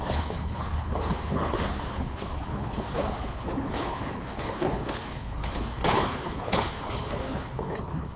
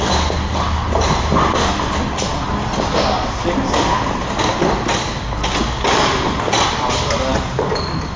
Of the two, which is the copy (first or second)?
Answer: first